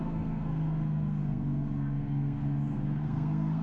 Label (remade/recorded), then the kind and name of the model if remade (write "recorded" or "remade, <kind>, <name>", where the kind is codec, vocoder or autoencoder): remade, codec, SNAC